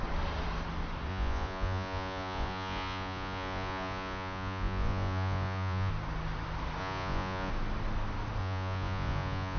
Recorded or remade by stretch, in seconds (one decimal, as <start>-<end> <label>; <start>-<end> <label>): 0.0-1.1 recorded; 1.1-5.9 remade; 5.9-6.8 recorded; 6.8-7.5 remade; 7.5-8.4 recorded; 8.4-9.6 remade